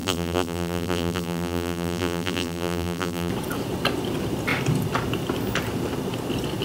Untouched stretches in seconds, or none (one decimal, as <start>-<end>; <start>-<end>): 3.3-6.6